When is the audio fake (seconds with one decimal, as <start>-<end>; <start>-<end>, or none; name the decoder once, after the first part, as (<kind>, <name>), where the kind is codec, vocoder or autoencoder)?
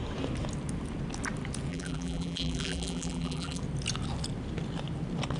1.7-3.6 (vocoder, BigVGAN v2)